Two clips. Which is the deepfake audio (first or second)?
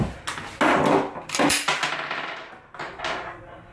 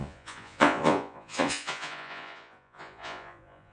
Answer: second